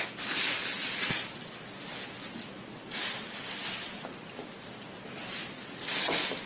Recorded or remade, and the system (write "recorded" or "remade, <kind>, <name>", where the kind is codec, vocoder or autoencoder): recorded